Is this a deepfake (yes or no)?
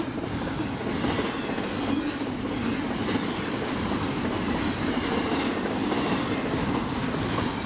no